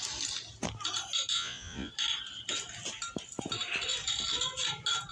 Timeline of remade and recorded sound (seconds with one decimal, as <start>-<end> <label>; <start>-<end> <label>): 0.0-1.3 recorded; 1.3-1.9 remade; 1.9-5.1 recorded